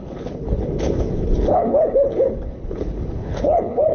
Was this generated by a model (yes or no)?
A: yes